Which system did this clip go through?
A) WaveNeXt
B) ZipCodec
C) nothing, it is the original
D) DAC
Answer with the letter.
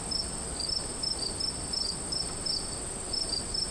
C